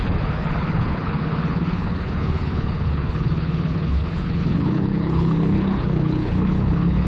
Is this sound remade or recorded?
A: remade